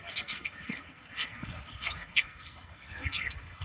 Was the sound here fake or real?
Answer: fake